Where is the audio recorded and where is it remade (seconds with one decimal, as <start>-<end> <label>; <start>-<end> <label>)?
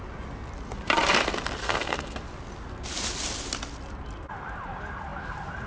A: 0.0-1.6 recorded; 1.6-2.2 remade; 2.2-5.7 recorded